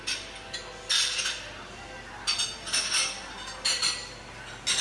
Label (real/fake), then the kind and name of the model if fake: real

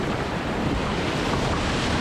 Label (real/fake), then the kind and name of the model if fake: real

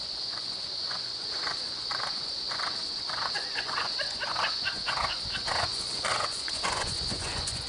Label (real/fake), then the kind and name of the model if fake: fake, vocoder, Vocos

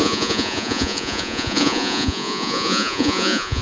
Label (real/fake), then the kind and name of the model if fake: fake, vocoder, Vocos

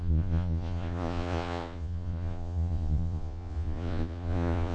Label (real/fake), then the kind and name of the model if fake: fake, vocoder, Vocos